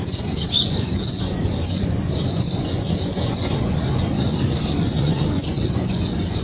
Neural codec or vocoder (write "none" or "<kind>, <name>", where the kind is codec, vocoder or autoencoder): vocoder, Vocos